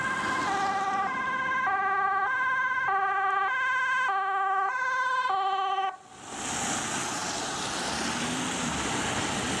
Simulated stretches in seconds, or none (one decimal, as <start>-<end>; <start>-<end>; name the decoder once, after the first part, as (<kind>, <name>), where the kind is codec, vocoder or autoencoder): 7.2-9.6 (vocoder, BigVGAN v2)